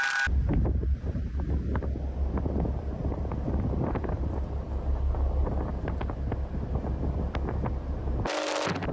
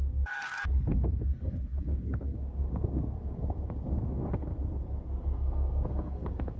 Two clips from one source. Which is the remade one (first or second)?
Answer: second